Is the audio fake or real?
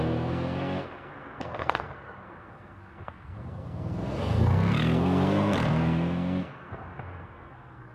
fake